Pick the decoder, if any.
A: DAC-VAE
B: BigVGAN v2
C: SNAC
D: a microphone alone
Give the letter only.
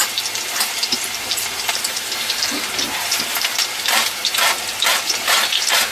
B